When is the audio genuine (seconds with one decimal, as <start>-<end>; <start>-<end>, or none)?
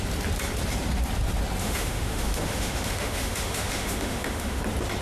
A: 0.0-1.6; 4.6-5.0